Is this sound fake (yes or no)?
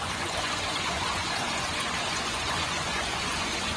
yes